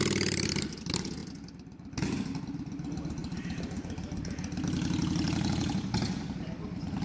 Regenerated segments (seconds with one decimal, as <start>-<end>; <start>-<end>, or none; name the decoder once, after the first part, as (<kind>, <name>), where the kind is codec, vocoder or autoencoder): 0.0-3.2 (vocoder, BigVGAN v2); 6.1-7.0